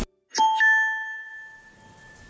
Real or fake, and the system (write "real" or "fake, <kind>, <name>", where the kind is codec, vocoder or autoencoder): real